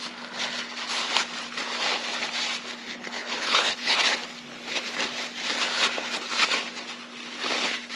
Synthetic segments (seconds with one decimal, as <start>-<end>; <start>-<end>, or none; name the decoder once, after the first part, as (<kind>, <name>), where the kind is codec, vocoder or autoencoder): 2.8-4.0 (codec, HILCodec)